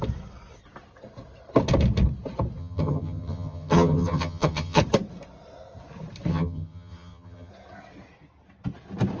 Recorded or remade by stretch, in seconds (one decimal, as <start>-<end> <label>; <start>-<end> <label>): 0.0-2.6 recorded; 2.6-4.8 remade; 4.8-6.3 recorded; 6.3-7.5 remade; 7.5-9.2 recorded